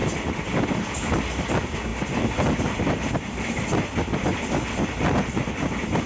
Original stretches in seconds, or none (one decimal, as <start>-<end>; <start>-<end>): 0.8-6.1